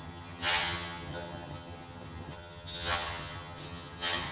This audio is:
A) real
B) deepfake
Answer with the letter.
B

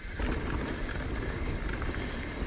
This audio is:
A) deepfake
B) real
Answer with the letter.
B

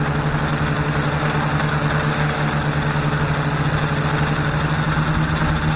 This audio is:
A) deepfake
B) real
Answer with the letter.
B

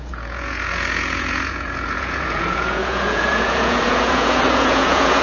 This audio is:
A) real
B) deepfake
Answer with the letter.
B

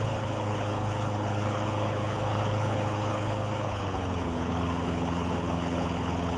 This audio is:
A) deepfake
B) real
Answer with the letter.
A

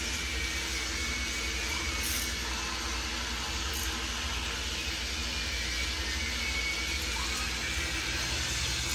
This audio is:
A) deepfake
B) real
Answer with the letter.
B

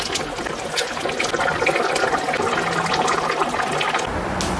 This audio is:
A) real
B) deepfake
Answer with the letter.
A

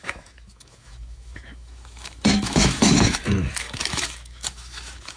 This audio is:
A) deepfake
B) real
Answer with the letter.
A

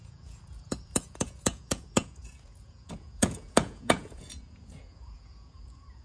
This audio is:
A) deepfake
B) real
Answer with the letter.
A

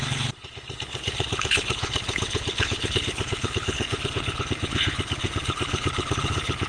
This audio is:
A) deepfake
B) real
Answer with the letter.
A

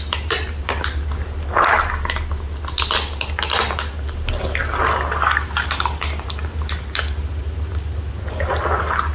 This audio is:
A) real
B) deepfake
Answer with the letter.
A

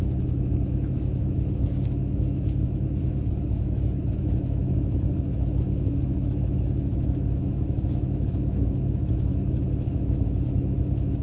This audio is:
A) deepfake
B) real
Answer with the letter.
A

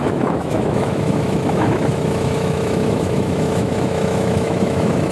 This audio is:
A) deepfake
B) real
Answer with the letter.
A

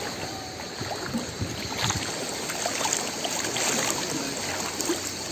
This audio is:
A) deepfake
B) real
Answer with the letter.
B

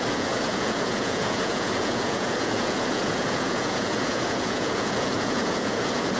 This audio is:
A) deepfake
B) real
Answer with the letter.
A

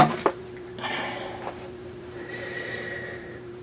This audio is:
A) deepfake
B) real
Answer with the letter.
A